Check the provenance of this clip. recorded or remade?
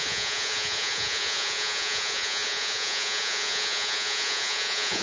remade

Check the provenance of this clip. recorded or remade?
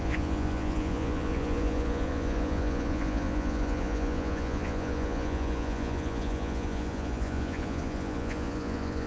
remade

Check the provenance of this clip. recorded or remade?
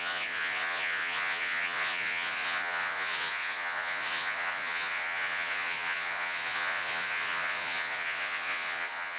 remade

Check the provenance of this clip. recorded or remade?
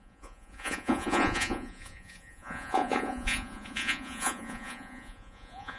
remade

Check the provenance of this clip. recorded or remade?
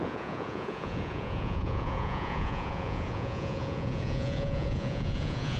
remade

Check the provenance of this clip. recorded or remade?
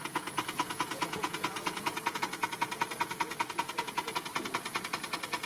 remade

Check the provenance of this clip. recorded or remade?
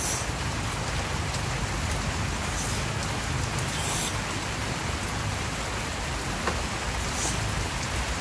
recorded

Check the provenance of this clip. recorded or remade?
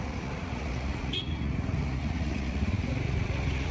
remade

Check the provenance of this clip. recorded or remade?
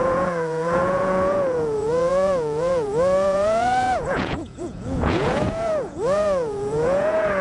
remade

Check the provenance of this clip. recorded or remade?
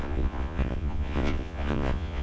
remade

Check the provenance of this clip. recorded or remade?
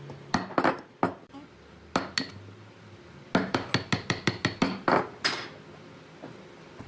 recorded